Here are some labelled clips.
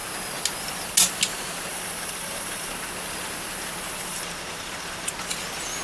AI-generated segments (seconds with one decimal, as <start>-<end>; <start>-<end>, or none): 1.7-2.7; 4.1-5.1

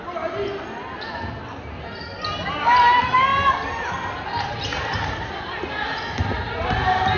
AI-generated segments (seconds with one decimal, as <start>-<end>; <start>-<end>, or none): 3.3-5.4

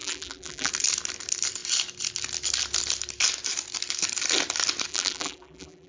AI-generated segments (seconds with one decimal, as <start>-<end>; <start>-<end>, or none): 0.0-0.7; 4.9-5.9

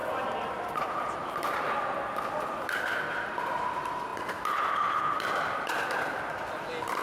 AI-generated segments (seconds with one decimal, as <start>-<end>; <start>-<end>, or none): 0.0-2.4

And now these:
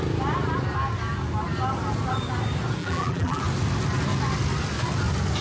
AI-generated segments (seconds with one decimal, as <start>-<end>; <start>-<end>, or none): 2.8-3.4